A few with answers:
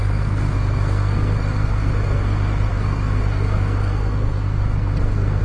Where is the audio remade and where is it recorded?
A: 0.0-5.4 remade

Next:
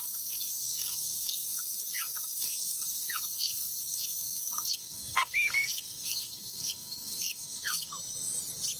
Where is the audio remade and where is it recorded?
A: 0.0-7.9 remade; 7.9-8.8 recorded